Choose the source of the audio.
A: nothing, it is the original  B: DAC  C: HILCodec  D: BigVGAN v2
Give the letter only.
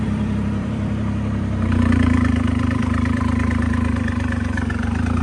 D